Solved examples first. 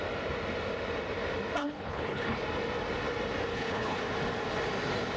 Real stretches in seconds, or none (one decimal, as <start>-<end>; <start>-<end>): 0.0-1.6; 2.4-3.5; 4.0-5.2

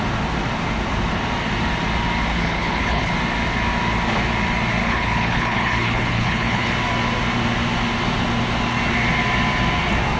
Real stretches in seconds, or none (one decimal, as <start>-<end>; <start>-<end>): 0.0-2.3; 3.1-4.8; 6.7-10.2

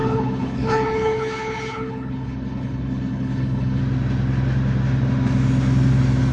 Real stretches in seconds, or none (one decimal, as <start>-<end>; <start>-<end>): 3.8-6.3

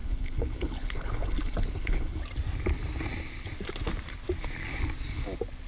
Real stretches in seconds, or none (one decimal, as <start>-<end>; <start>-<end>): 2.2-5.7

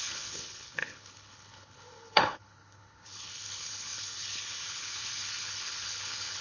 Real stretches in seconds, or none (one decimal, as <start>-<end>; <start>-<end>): none

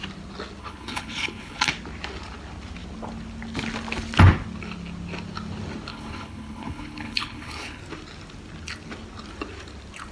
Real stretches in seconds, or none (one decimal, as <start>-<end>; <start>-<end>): 0.0-0.6; 1.7-5.9; 7.8-10.1